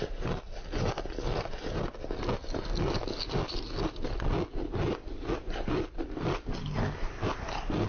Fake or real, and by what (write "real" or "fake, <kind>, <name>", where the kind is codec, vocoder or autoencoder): real